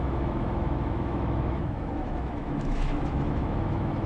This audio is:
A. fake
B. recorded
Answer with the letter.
A